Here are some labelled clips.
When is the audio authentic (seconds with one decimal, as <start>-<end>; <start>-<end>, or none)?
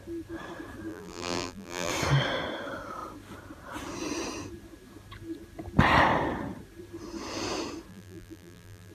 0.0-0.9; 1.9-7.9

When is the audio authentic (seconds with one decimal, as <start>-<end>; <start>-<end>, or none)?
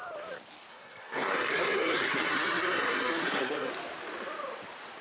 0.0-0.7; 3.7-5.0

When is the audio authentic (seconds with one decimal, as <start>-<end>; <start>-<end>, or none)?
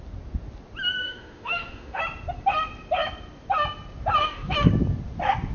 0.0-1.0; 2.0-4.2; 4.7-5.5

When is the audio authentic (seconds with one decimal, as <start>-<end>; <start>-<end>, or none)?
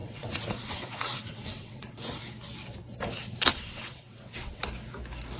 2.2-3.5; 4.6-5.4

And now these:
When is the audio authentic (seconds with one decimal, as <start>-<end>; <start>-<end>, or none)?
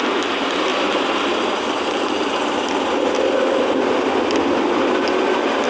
0.0-5.7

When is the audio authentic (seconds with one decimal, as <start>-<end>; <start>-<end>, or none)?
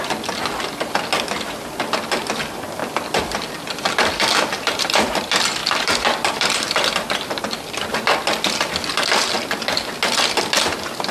0.0-2.8; 5.1-5.6; 7.4-11.1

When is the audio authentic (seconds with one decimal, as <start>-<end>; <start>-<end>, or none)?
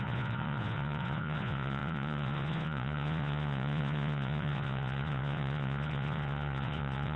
none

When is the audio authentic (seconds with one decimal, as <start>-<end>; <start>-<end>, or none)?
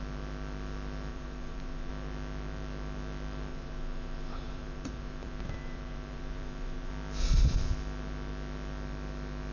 0.0-1.1; 1.9-3.5; 6.9-9.5